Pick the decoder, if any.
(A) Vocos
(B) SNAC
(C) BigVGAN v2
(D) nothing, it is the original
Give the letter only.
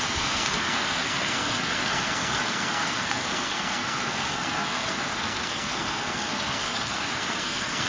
B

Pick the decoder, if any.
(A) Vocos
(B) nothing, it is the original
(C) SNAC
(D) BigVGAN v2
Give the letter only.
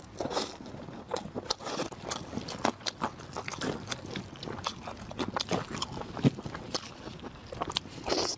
B